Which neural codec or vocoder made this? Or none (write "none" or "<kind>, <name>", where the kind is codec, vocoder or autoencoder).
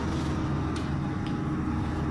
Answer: none